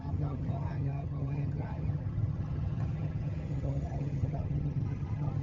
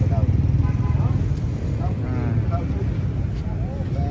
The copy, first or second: first